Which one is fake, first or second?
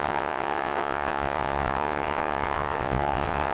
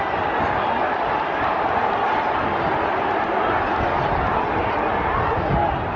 first